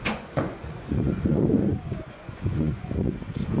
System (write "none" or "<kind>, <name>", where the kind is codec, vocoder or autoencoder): vocoder, Vocos